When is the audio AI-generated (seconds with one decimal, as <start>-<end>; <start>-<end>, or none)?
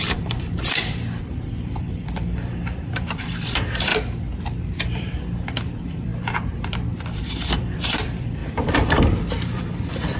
0.0-3.9; 4.8-6.1; 7.2-10.2